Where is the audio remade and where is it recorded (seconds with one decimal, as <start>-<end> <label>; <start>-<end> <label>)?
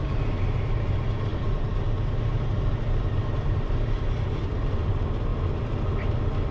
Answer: 0.0-6.5 recorded